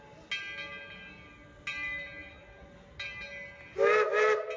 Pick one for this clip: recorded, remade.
recorded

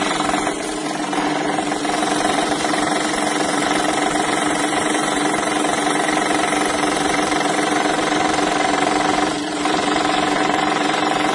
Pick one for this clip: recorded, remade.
remade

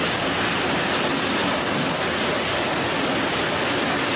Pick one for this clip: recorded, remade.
recorded